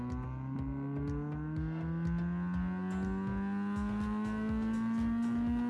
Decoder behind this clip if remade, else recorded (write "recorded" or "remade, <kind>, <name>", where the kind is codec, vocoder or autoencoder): recorded